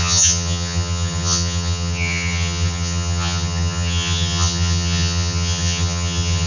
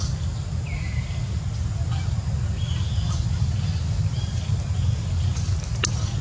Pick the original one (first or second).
second